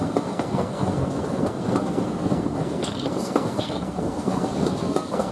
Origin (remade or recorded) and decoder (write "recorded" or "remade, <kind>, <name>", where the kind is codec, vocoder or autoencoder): remade, codec, SNAC